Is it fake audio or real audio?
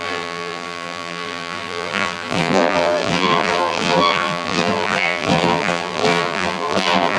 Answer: fake